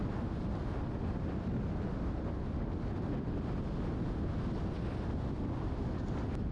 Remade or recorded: recorded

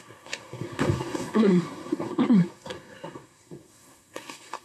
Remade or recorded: remade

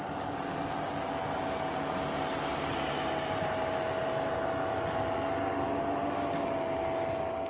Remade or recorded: recorded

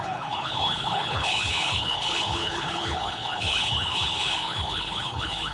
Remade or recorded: remade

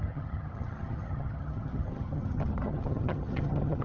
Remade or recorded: remade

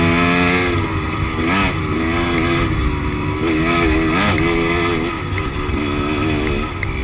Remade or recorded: recorded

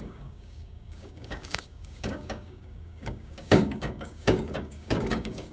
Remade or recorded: remade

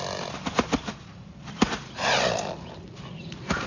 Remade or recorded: recorded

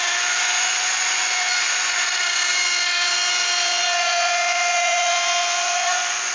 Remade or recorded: remade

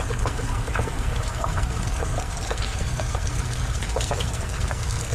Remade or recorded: remade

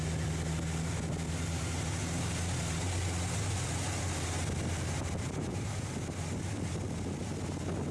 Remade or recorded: recorded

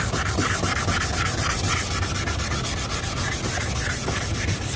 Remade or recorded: recorded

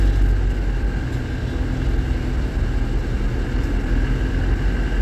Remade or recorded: recorded